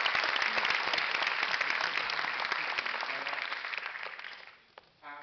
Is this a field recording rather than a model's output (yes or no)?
yes